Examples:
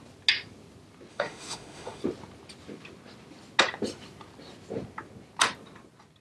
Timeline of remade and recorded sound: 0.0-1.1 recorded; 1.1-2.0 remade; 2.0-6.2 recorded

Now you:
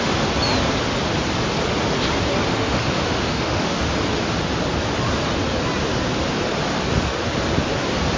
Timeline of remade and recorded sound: 0.0-2.5 recorded; 2.5-3.8 remade; 3.8-8.2 recorded

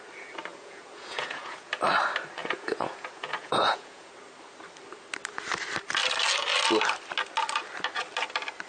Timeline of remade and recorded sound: 0.0-0.5 recorded; 0.5-1.7 remade; 1.7-2.4 recorded; 2.4-4.1 remade; 4.1-8.7 recorded

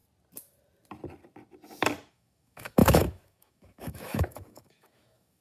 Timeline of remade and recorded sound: 0.0-2.1 recorded; 2.1-5.4 remade